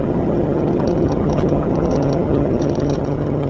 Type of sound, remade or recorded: remade